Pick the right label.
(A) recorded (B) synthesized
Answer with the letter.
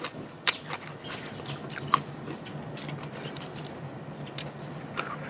A